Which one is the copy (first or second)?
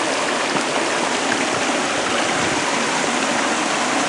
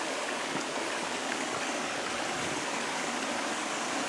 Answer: second